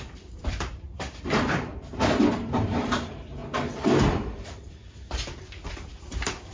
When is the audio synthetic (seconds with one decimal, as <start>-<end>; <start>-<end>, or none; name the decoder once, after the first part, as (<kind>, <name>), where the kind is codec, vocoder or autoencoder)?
0.0-1.7 (vocoder, BigVGAN v2); 2.3-3.4; 4.1-4.8; 5.7-6.5